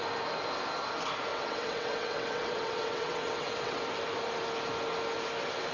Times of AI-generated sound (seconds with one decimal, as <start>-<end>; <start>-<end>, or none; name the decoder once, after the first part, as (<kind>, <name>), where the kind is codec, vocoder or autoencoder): 1.3-3.8 (vocoder, WaveNeXt)